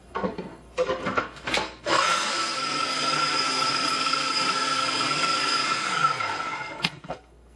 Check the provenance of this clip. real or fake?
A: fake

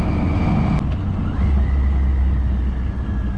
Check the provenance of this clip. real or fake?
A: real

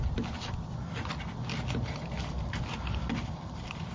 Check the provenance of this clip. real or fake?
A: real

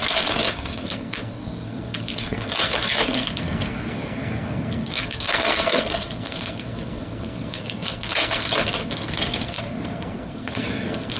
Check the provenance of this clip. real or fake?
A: fake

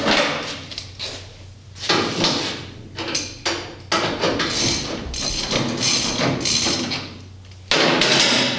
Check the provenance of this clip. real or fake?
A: real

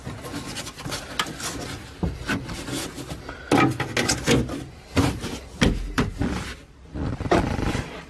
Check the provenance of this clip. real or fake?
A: real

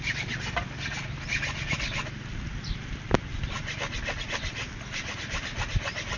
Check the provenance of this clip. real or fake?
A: real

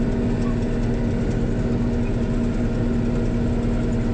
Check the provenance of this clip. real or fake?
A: real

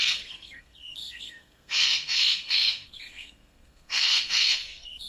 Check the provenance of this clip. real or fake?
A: fake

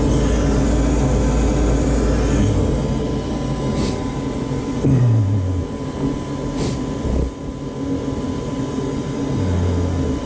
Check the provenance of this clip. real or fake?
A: real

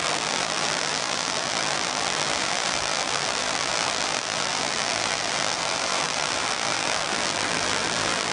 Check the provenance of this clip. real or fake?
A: fake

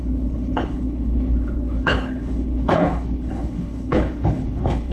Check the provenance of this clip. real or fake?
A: fake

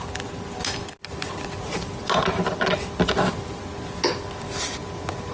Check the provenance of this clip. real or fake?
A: real